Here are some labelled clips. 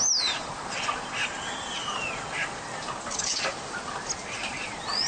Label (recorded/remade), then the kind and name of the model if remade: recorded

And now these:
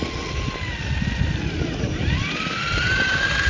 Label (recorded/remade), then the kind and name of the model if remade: recorded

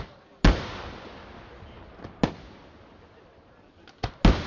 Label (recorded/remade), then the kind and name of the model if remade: recorded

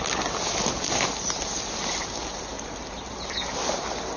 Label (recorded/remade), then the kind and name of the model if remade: recorded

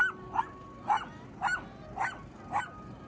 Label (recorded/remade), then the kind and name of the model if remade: recorded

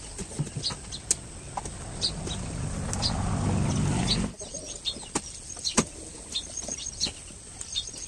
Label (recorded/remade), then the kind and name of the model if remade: recorded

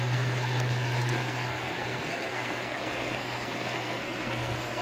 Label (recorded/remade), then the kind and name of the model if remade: remade, codec, SNAC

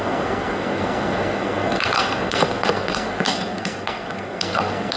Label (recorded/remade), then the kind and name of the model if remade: remade, codec, SNAC